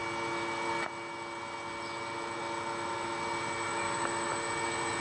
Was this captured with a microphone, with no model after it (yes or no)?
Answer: yes